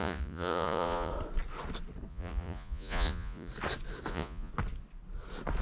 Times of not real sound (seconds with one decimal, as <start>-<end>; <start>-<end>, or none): 0.0-1.1; 2.1-3.5; 4.1-4.5